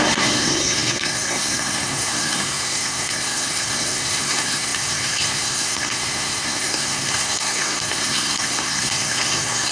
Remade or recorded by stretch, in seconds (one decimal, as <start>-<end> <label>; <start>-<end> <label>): 0.0-9.7 remade